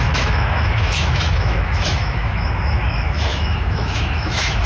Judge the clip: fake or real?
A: fake